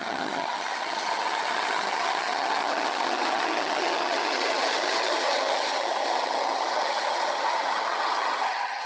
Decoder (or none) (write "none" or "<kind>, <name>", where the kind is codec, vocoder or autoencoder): vocoder, HiFi-GAN